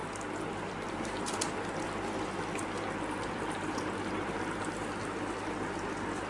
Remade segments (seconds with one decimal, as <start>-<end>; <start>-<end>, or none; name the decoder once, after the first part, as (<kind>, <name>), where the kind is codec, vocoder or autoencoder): none